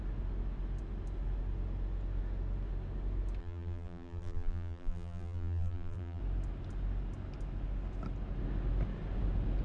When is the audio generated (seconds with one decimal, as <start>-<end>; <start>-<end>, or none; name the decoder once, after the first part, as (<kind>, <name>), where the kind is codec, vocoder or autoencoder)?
3.4-6.2 (vocoder, BigVGAN v2)

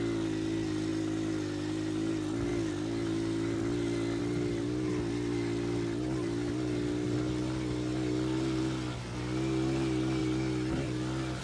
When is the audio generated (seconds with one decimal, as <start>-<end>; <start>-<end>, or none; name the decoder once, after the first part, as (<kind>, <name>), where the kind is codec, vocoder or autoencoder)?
0.9-2.1 (vocoder, BigVGAN v2); 10.2-11.4

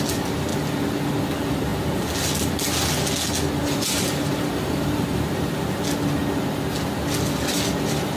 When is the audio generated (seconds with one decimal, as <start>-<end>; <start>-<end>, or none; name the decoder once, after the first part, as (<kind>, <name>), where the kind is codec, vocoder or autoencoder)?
3.6-5.8 (vocoder, BigVGAN v2)

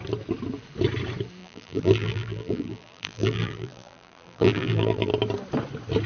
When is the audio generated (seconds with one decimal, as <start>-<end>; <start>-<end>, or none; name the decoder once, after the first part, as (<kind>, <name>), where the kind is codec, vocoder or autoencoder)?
1.4-5.1 (vocoder, BigVGAN v2)

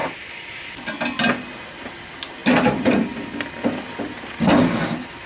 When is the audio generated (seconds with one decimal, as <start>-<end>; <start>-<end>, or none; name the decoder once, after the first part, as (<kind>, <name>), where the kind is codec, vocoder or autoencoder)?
2.4-3.5 (vocoder, BigVGAN v2)

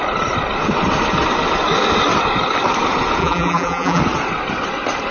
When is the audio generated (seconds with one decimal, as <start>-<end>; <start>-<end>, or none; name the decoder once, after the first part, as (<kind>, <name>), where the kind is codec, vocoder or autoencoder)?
3.2-4.0 (vocoder, BigVGAN v2)